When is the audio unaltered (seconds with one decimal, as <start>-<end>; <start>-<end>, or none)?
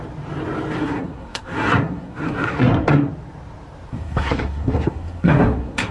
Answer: 0.0-0.8; 3.1-3.9